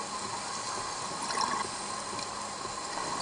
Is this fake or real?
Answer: real